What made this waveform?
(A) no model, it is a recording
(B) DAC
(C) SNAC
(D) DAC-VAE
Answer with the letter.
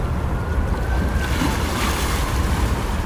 A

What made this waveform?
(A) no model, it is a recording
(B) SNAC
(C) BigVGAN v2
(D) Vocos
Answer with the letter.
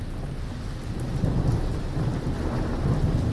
A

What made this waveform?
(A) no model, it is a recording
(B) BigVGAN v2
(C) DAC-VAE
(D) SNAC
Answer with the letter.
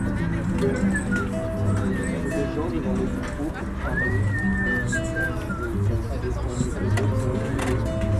A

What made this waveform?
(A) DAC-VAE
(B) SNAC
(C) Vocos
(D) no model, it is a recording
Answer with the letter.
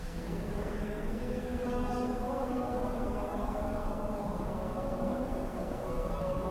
B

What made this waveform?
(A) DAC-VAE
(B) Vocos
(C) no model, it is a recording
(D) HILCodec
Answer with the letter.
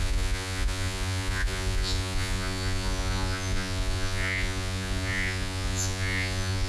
B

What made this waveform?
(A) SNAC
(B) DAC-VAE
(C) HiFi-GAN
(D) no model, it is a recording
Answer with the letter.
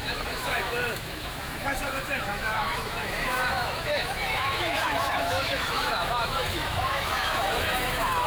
B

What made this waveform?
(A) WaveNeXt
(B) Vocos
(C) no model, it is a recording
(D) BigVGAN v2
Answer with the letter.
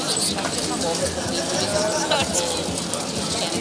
C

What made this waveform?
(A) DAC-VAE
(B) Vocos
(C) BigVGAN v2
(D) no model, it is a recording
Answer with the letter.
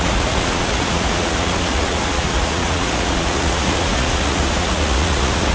B